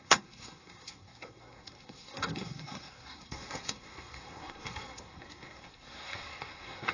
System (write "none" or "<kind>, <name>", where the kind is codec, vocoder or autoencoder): codec, SNAC